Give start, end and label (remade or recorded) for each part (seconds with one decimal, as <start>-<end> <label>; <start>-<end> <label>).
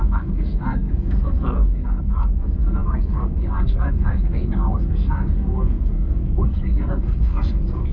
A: 0.0-7.9 remade